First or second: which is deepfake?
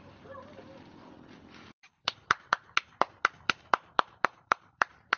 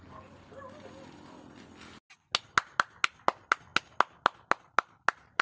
first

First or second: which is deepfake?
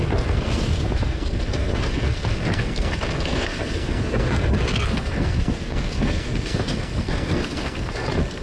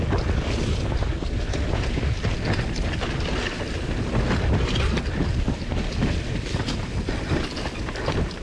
first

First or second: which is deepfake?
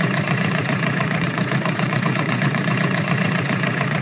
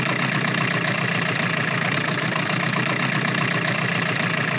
first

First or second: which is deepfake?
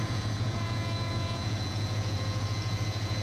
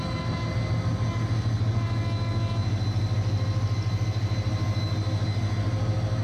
first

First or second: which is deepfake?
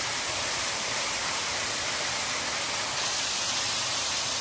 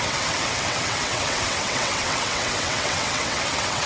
second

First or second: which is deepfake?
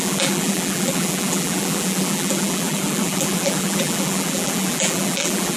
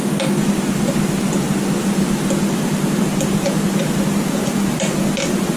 first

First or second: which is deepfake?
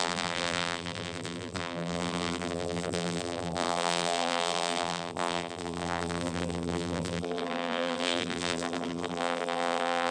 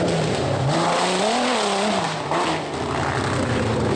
first